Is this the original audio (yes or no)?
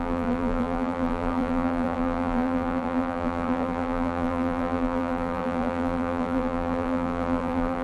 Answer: no